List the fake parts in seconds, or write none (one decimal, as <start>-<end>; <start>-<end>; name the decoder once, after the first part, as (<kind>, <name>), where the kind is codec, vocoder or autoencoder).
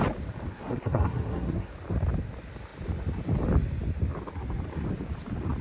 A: 0.5-1.7 (codec, SNAC)